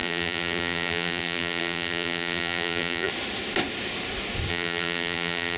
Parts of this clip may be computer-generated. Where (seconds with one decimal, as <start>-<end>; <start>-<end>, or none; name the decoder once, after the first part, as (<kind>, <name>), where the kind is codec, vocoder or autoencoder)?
0.0-3.1 (vocoder, BigVGAN v2); 4.5-5.6